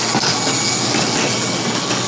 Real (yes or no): yes